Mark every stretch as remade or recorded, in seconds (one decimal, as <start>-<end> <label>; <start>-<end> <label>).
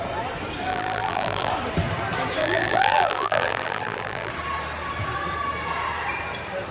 0.0-0.7 recorded; 0.7-1.5 remade; 1.5-2.4 recorded; 2.4-4.3 remade; 4.3-6.7 recorded